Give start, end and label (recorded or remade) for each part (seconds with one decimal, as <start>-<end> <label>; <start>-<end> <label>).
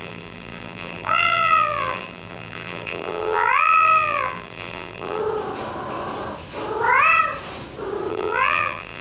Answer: 0.0-5.2 remade; 5.2-8.1 recorded; 8.1-9.0 remade